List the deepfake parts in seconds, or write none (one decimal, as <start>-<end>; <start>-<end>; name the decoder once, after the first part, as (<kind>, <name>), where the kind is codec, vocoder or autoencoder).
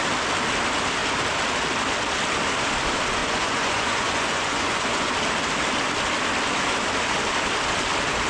3.2-5.1 (vocoder, Vocos)